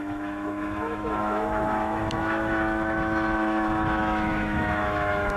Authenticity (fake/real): fake